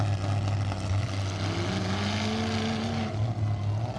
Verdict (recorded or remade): recorded